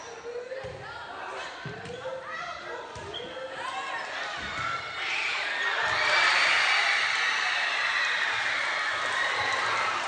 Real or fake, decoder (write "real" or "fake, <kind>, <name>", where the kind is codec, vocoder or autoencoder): real